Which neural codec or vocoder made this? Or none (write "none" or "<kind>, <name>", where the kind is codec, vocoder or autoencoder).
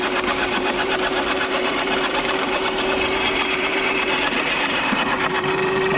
vocoder, BigVGAN v2